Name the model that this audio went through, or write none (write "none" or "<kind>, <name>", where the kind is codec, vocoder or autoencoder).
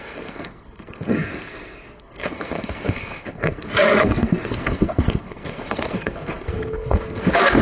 codec, SNAC